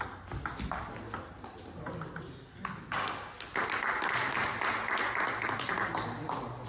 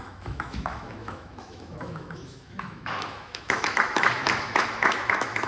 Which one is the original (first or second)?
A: first